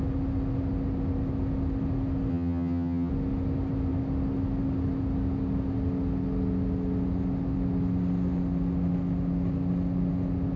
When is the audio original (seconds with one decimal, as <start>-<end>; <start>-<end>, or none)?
0.0-2.3; 3.1-10.6